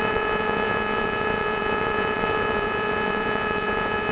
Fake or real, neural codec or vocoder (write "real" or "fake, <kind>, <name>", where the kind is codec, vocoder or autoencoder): fake, vocoder, Vocos